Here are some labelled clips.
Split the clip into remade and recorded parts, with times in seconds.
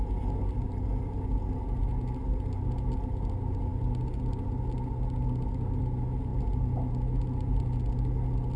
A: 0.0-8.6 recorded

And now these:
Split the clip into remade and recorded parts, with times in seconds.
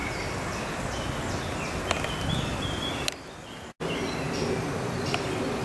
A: 0.0-0.8 remade; 0.8-2.5 recorded; 2.5-3.3 remade; 3.3-5.6 recorded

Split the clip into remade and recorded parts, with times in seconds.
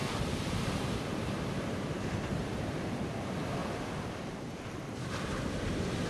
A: 0.0-3.6 remade; 3.6-4.8 recorded; 4.8-6.1 remade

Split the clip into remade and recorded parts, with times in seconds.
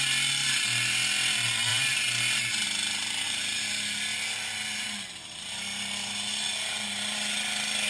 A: 0.0-7.9 recorded